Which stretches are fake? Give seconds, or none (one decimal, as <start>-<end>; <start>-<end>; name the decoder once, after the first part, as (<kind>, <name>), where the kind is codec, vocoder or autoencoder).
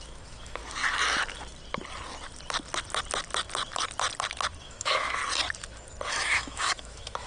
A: 0.0-0.6 (autoencoder, DAC-VAE); 4.6-5.2; 6.1-7.3